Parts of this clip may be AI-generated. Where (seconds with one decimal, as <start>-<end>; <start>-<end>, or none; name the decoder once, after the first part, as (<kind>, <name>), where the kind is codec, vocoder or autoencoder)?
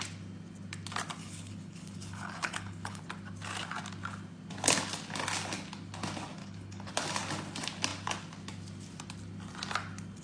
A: 1.2-3.0 (codec, HILCodec); 6.4-6.9